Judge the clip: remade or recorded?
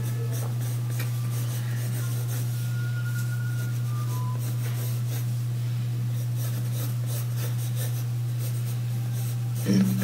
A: remade